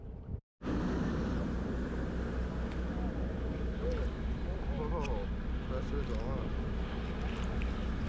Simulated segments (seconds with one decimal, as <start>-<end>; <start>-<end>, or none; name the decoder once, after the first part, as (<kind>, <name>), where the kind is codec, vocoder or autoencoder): none